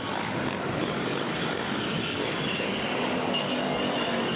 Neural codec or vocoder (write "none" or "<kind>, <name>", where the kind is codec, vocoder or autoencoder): codec, DAC